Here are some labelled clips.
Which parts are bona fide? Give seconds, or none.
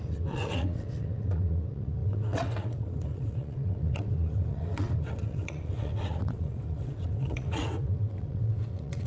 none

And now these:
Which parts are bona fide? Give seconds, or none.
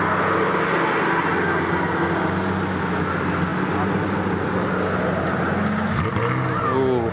0.0-7.1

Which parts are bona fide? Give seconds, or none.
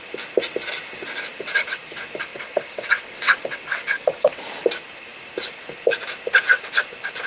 0.0-1.3; 1.8-2.3; 4.4-7.3